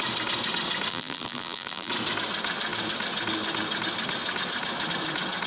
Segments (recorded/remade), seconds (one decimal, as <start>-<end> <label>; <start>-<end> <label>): 0.0-0.9 recorded; 0.9-1.9 remade; 1.9-5.5 recorded